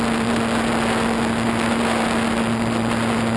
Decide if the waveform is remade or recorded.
recorded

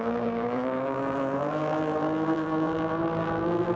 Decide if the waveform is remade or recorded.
remade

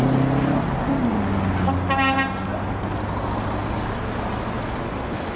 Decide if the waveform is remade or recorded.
recorded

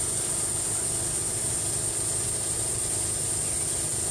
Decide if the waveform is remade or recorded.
recorded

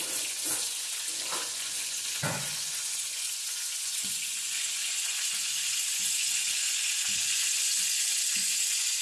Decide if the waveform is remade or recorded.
remade